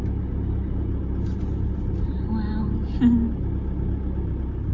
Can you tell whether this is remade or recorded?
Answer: recorded